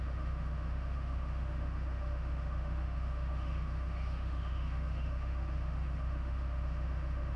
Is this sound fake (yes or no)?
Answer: yes